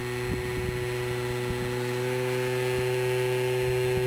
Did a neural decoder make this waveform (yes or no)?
no